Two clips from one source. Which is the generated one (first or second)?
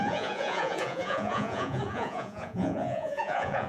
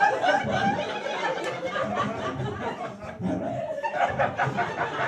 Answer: first